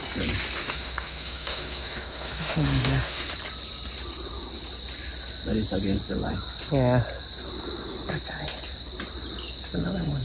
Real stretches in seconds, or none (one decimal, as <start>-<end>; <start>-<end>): 0.0-0.6; 3.3-10.2